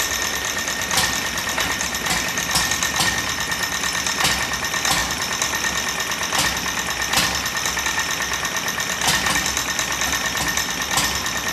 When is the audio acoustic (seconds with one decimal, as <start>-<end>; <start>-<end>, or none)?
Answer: 0.0-11.5